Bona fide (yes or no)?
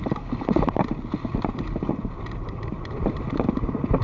yes